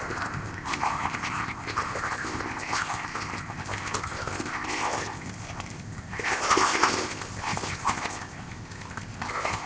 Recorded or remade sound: remade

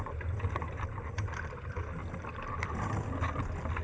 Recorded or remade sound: recorded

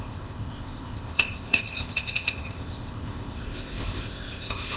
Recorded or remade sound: remade